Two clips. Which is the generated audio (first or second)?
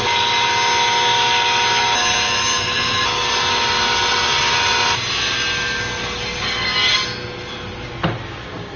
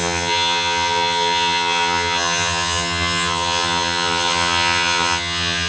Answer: second